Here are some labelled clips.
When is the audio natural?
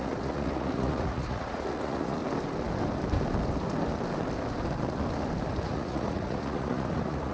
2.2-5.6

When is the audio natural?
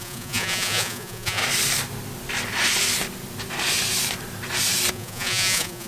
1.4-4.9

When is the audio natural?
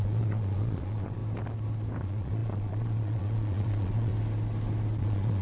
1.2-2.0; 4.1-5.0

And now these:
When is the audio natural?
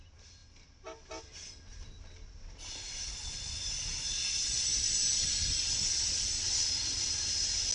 0.0-7.7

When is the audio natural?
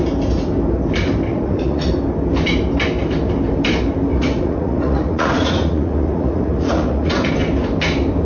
0.0-1.3; 1.9-4.1; 7.3-8.2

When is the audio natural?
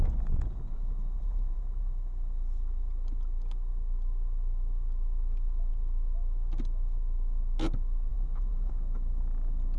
0.0-0.4; 1.9-8.1; 8.7-9.8